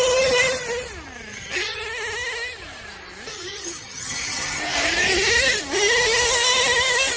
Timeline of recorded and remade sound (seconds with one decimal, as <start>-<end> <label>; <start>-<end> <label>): 0.0-1.3 recorded; 1.3-1.8 remade; 1.8-3.3 recorded; 3.3-4.6 remade; 4.6-7.2 recorded